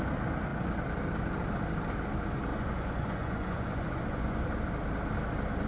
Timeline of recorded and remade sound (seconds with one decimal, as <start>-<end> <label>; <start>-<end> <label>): 0.0-2.5 recorded; 2.5-4.4 remade; 4.4-5.7 recorded